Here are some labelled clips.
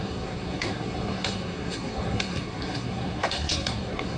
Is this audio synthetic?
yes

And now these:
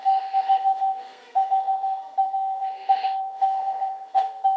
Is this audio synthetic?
yes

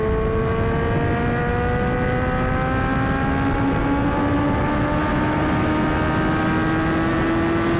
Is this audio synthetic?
no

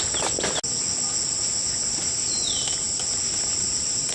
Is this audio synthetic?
no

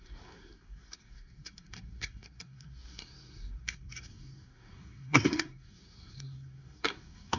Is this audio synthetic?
yes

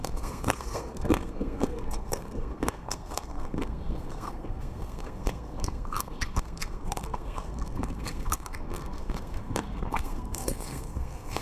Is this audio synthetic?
yes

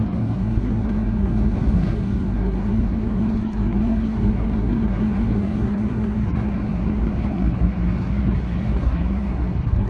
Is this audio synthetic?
yes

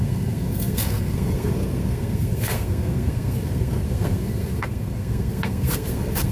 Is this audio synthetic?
yes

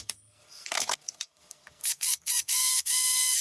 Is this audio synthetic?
yes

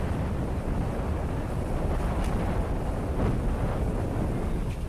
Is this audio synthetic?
no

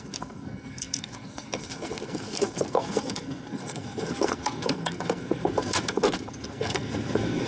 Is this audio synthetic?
yes